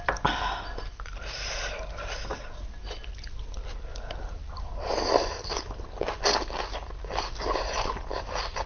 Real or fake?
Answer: real